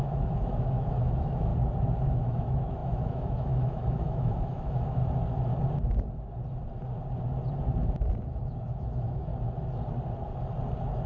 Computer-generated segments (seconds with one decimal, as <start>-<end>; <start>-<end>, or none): 0.0-1.5; 2.2-5.0; 8.3-9.3

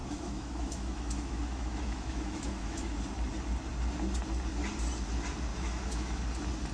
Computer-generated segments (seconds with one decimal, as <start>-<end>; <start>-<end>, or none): 0.0-2.9; 5.5-6.2

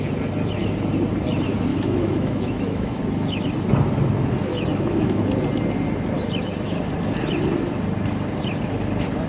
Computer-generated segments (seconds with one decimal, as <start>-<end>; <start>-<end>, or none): 1.7-3.0; 4.5-5.2

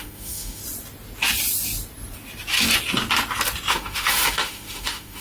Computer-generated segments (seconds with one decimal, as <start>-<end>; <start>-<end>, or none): 0.0-0.6; 3.7-5.2

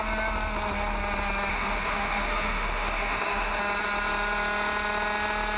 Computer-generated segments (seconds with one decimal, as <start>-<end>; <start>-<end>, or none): 1.5-3.6

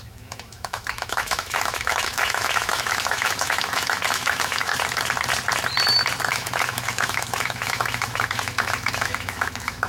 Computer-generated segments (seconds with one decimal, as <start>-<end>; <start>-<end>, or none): 0.0-4.7; 6.3-9.9

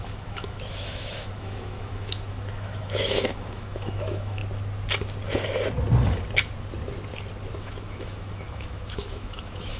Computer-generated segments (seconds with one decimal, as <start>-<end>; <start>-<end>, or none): 0.0-4.4; 7.6-9.8